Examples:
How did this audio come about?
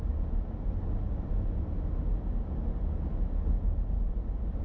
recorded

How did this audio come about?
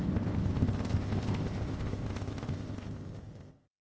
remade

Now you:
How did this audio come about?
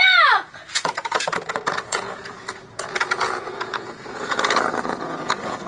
remade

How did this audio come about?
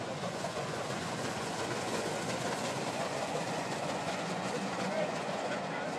remade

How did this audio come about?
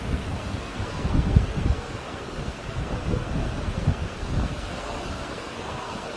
remade